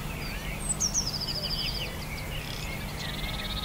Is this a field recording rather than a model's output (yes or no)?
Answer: yes